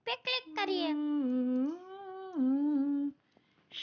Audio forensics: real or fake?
real